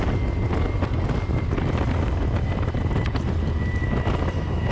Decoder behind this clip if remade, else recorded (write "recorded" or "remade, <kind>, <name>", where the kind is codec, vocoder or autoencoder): recorded